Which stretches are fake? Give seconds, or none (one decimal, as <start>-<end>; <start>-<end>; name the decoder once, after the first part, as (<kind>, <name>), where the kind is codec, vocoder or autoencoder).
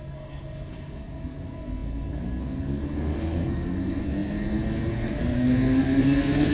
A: 0.0-6.5 (codec, SNAC)